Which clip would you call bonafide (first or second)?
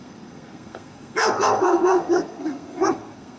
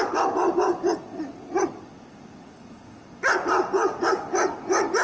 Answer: second